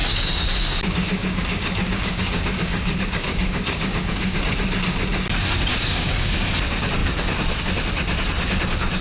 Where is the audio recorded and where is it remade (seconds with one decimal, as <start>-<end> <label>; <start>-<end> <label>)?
0.0-4.4 remade; 4.4-5.7 recorded; 5.7-6.5 remade; 6.5-9.0 recorded